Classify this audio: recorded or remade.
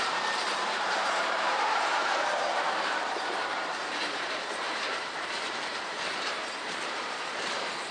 remade